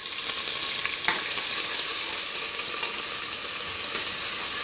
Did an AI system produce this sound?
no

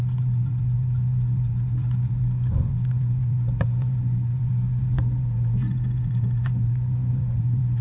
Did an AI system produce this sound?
yes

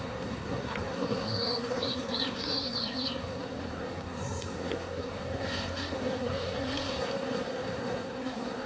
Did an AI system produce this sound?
yes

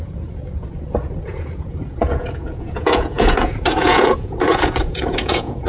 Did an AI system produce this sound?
yes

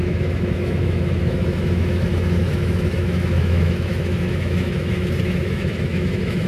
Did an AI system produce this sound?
yes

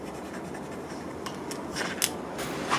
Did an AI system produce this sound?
no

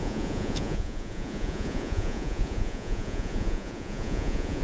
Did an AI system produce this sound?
yes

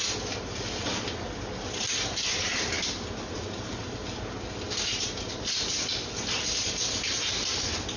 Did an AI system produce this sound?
no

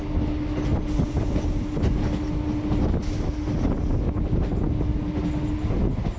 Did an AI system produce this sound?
no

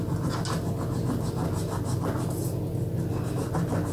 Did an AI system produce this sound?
no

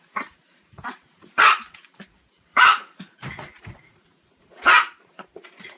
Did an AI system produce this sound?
yes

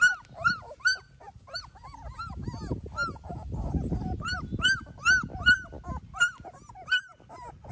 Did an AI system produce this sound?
no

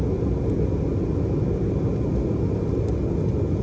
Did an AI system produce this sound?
no